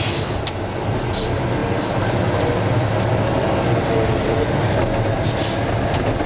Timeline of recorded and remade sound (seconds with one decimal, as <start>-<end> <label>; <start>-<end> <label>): 0.0-6.3 recorded